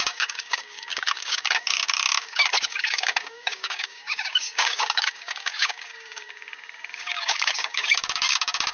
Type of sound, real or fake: fake